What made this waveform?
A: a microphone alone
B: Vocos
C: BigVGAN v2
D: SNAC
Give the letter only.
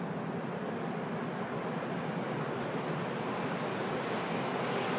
A